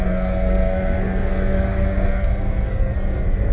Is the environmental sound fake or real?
fake